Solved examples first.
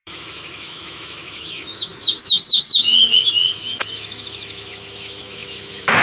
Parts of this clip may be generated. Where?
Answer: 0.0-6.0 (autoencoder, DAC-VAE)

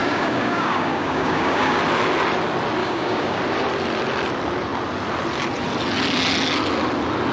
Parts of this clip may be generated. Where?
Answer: 0.0-1.8 (codec, DAC); 2.8-3.4